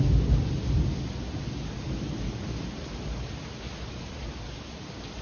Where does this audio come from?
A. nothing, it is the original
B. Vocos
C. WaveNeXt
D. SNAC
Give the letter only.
A